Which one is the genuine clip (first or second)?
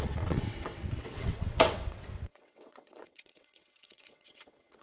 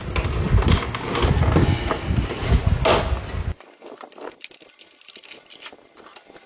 second